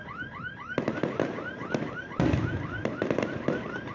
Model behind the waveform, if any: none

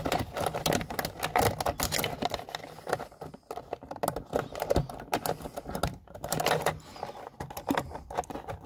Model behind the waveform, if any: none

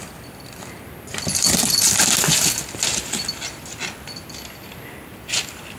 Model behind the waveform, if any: none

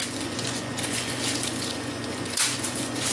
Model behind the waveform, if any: vocoder, Vocos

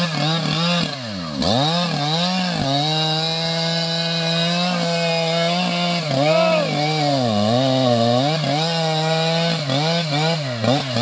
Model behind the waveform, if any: none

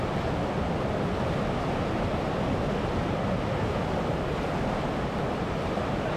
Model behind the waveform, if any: none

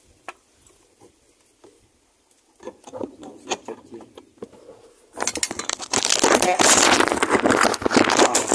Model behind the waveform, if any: none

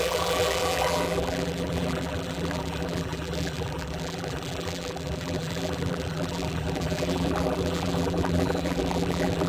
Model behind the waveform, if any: vocoder, BigVGAN v2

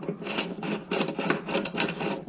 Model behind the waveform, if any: none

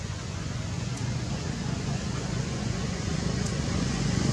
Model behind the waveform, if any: vocoder, Vocos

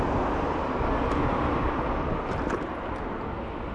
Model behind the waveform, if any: none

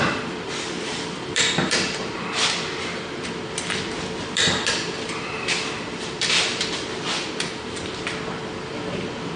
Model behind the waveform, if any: vocoder, BigVGAN v2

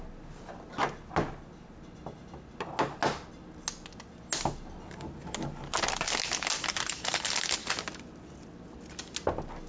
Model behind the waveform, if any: none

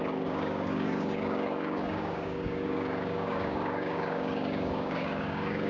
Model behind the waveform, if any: codec, DAC